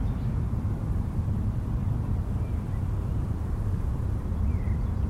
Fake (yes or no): yes